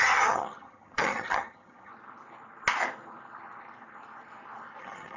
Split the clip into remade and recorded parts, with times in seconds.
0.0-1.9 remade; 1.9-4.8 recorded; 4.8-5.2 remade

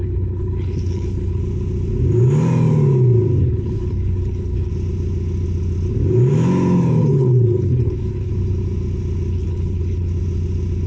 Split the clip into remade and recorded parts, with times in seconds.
0.0-1.4 remade; 1.4-3.4 recorded; 3.4-4.7 remade; 4.7-7.0 recorded; 7.0-8.3 remade; 8.3-9.3 recorded; 9.3-10.1 remade; 10.1-10.9 recorded

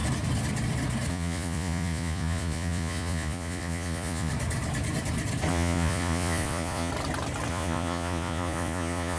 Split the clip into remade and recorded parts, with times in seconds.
0.0-1.1 recorded; 1.1-4.3 remade; 4.3-5.5 recorded; 5.5-6.9 remade; 6.9-7.5 recorded; 7.5-9.2 remade

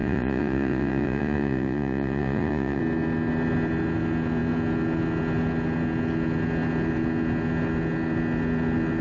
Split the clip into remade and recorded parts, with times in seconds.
0.0-2.8 remade; 2.8-9.0 recorded

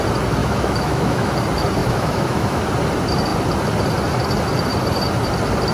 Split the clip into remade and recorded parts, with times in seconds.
0.0-0.4 recorded; 0.4-1.3 remade; 1.3-1.8 recorded; 1.8-2.6 remade; 2.6-5.7 recorded

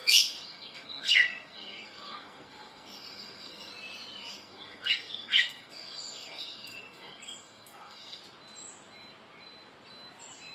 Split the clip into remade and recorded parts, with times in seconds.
0.0-3.7 remade; 3.7-4.3 recorded; 4.3-8.2 remade; 8.2-10.5 recorded